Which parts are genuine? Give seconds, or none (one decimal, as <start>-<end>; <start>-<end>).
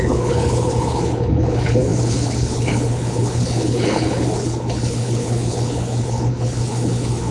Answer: none